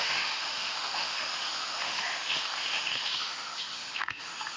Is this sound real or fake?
fake